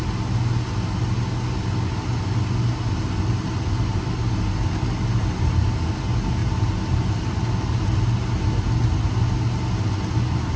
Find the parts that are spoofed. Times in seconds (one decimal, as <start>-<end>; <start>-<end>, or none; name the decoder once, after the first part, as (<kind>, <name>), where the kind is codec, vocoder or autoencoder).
none